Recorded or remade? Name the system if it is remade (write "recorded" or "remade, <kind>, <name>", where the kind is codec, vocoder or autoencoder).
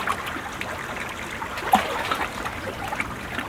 recorded